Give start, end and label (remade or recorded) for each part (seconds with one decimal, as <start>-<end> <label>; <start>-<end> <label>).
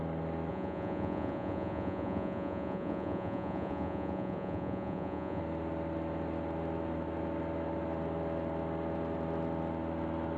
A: 0.0-0.5 recorded; 0.5-5.4 remade; 5.4-10.4 recorded